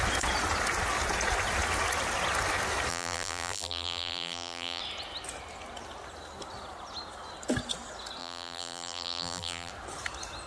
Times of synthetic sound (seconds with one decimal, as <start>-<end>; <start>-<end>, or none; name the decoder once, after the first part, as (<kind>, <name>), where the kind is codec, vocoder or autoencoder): 2.9-4.8 (vocoder, BigVGAN v2); 8.2-9.7